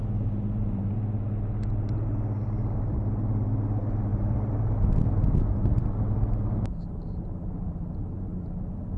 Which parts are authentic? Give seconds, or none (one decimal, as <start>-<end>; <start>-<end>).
0.0-9.0